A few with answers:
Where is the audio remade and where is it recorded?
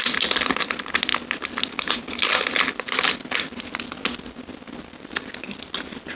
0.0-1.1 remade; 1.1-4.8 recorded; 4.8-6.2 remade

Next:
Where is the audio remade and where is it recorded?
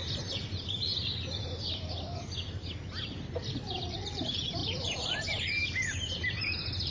0.0-0.9 remade; 0.9-3.3 recorded; 3.3-6.9 remade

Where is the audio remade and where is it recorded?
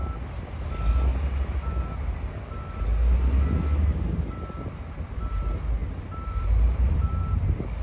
0.0-5.8 recorded; 5.8-7.2 remade; 7.2-7.8 recorded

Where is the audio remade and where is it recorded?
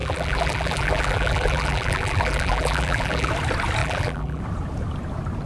0.0-3.3 remade; 3.3-3.8 recorded; 3.8-4.4 remade; 4.4-5.5 recorded